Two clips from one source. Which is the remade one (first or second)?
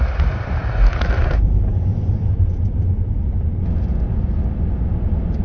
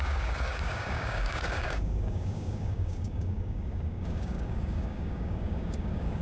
second